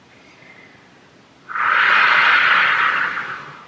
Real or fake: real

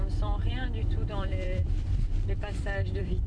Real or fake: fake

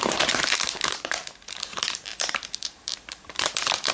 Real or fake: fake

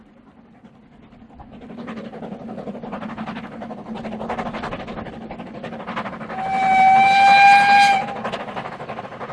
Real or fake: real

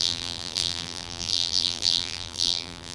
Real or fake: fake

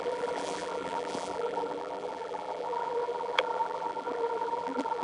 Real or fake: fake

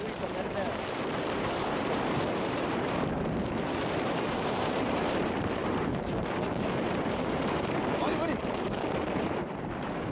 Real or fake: fake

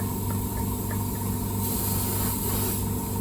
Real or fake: real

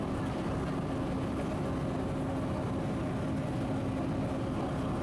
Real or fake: real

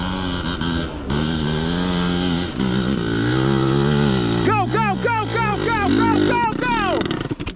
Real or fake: real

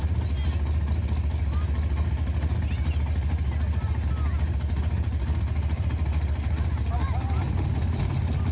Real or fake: real